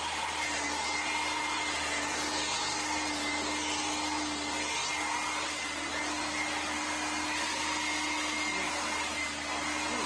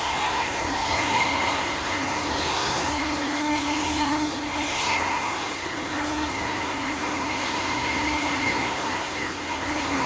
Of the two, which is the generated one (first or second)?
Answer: second